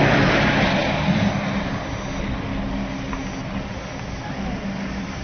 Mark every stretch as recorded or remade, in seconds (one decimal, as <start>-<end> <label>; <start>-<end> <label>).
0.0-5.2 recorded